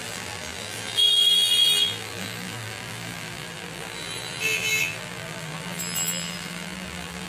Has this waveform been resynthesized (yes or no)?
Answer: yes